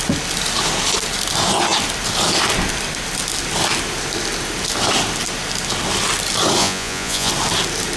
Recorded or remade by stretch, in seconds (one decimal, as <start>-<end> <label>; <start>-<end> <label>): 0.0-6.6 recorded; 6.6-7.3 remade; 7.3-8.0 recorded